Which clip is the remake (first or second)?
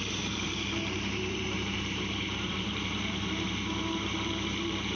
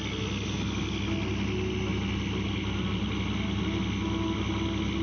first